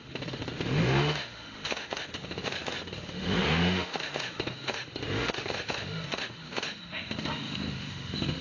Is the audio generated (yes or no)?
yes